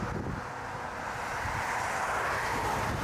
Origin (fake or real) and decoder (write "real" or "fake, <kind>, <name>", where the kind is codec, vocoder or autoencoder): real